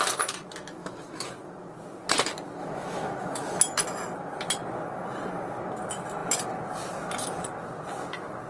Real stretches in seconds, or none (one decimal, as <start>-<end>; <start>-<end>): 0.0-0.8; 1.3-2.6; 3.6-8.5